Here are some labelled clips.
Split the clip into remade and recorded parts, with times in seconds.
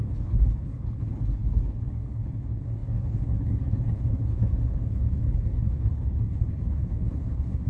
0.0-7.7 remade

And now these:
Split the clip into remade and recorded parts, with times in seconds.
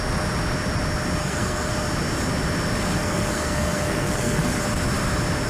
0.0-1.2 recorded; 1.2-1.7 remade; 1.7-3.0 recorded; 3.0-4.6 remade; 4.6-5.5 recorded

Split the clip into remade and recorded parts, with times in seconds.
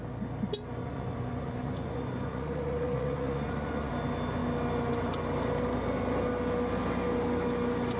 0.0-0.8 recorded; 0.8-3.9 remade; 3.9-8.0 recorded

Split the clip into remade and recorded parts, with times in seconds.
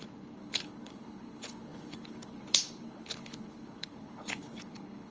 0.0-5.1 remade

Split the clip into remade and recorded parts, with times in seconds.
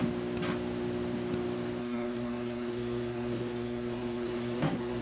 0.0-1.8 recorded; 1.8-5.0 remade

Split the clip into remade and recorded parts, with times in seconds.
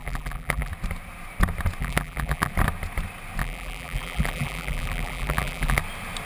0.0-0.7 remade; 0.7-1.8 recorded; 1.8-2.5 remade; 2.5-3.4 recorded; 3.4-5.8 remade; 5.8-6.3 recorded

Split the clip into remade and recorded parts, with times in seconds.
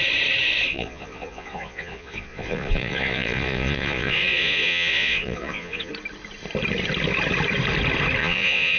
0.0-0.7 recorded; 0.7-5.9 remade; 5.9-8.2 recorded; 8.2-8.8 remade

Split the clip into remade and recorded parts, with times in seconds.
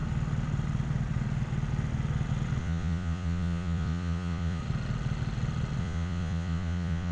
0.0-2.6 recorded; 2.6-4.6 remade; 4.6-5.8 recorded; 5.8-7.1 remade